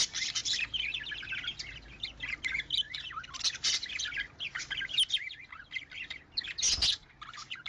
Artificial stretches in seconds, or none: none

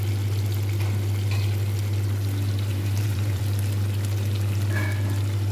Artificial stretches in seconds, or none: 2.7-3.4 (vocoder, BigVGAN v2)